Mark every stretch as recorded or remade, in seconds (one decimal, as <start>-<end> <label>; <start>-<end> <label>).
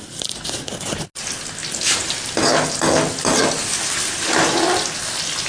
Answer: 0.0-5.5 recorded